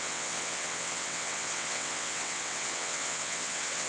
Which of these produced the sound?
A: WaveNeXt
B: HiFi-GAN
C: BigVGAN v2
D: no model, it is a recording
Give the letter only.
A